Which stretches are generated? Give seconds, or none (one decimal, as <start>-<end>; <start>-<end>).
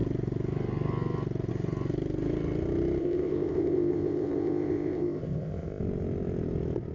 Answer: 3.0-5.8